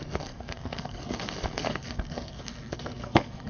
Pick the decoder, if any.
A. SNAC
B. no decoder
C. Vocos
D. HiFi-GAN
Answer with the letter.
A